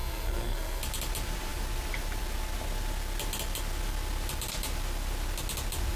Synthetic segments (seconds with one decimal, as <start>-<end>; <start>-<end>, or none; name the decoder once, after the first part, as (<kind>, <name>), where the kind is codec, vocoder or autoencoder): 0.0-0.8 (codec, SNAC)